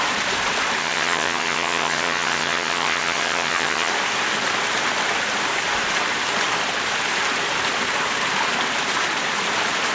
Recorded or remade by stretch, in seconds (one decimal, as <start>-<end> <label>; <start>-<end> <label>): 0.0-0.8 recorded; 0.8-3.9 remade; 3.9-9.9 recorded